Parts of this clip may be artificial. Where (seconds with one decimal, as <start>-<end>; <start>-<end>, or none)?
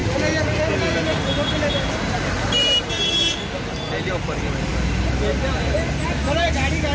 none